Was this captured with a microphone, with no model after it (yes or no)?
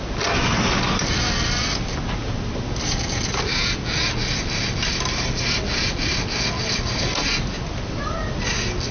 yes